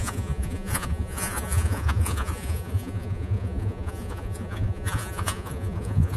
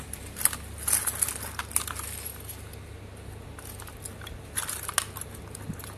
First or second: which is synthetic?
first